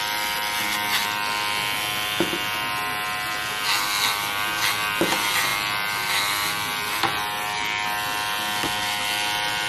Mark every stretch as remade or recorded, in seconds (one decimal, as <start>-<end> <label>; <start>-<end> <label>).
0.0-9.7 recorded